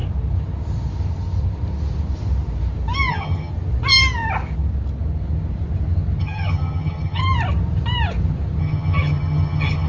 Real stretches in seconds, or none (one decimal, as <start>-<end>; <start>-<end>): 0.0-3.1; 3.5-6.2; 7.2-8.6